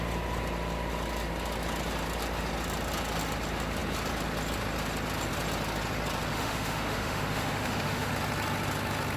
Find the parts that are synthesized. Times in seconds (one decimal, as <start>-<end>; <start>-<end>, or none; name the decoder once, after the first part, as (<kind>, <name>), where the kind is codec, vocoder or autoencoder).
6.3-8.1 (autoencoder, DAC-VAE)